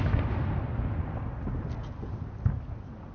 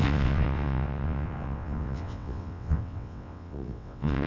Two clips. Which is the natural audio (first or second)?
first